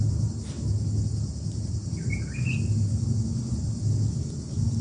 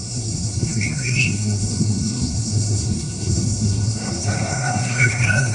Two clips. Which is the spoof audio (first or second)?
second